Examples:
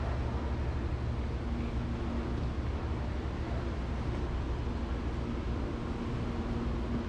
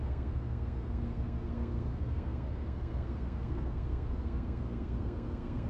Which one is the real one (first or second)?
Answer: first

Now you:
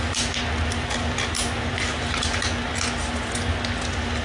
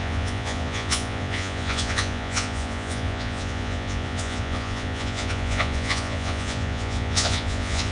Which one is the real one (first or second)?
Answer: first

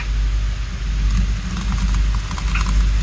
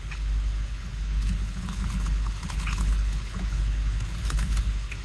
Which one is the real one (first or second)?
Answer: first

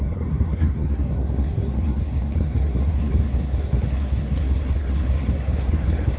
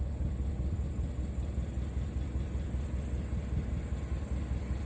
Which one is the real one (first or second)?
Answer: second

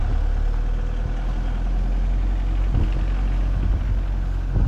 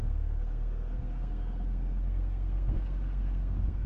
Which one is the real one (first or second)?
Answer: first